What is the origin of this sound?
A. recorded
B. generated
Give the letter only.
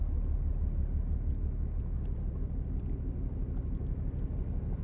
A